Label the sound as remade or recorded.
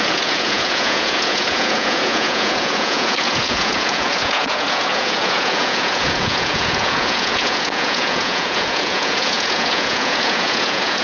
remade